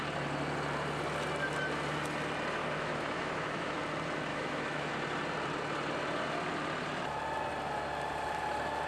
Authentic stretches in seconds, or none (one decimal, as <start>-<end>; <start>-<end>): 0.0-2.6; 3.8-4.3; 4.9-8.9